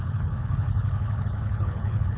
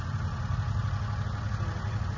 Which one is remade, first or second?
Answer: first